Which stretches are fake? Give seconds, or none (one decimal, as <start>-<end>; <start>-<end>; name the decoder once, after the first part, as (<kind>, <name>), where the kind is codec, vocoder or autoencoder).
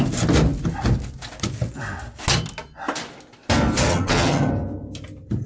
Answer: 3.9-4.5 (vocoder, HiFi-GAN)